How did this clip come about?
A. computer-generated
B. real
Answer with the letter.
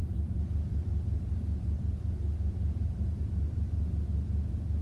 A